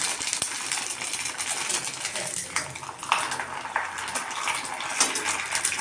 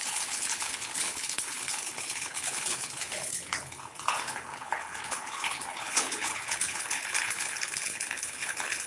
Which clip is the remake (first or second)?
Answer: second